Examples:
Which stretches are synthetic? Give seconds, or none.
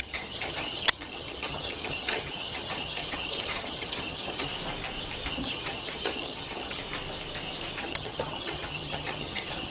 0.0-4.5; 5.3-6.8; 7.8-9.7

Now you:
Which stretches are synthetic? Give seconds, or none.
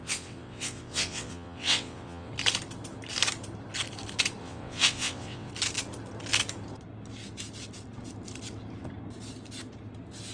0.0-2.3; 4.4-5.5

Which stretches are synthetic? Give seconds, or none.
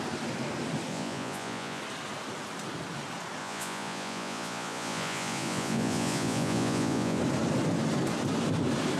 0.9-1.8; 3.4-7.2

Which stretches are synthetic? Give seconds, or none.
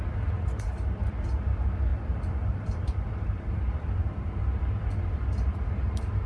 1.9-5.7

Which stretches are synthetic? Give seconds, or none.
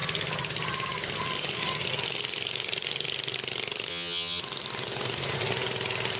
3.9-4.4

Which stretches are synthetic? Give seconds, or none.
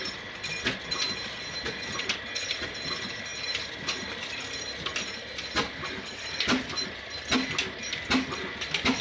none